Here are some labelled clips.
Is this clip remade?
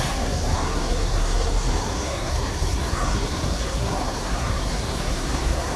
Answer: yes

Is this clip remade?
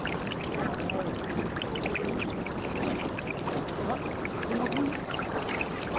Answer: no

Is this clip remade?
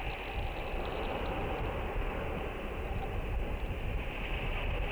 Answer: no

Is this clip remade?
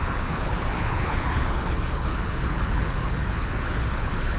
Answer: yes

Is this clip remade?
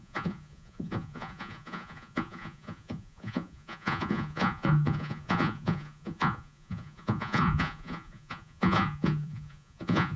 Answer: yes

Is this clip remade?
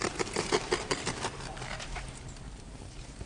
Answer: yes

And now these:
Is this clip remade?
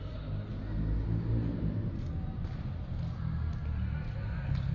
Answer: no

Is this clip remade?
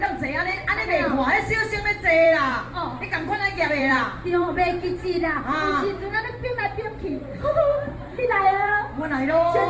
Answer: yes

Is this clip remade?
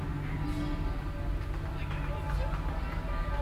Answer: no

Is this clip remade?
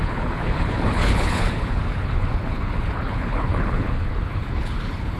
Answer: yes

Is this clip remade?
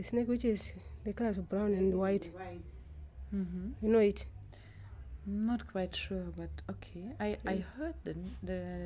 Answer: no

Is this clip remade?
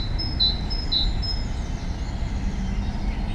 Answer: no